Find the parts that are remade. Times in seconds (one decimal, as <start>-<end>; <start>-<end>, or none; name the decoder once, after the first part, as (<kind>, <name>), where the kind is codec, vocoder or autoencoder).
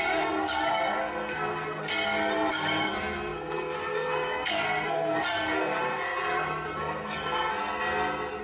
0.0-1.9 (codec, SNAC); 2.5-7.5